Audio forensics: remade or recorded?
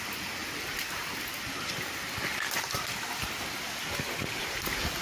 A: recorded